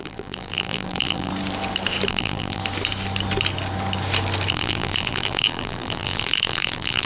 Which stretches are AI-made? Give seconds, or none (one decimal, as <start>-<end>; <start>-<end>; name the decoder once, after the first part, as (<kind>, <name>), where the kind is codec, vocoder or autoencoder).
0.0-1.3 (vocoder, BigVGAN v2); 2.1-2.6; 4.5-7.1

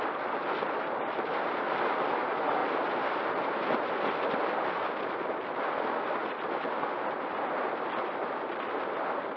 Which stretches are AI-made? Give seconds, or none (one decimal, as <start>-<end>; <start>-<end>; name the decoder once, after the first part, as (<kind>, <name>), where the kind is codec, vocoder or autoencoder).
none

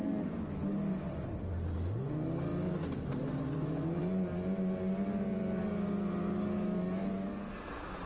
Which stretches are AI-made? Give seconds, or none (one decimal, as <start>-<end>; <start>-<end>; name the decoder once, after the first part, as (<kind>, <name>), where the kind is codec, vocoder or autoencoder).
none